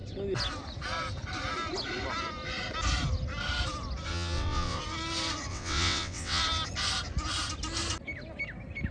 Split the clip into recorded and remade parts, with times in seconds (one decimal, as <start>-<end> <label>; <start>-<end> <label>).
0.0-4.1 recorded; 4.1-4.8 remade; 4.8-5.5 recorded; 5.5-6.4 remade; 6.4-8.9 recorded